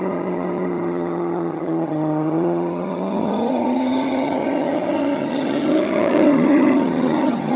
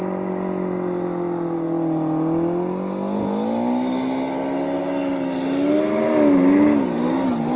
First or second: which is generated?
first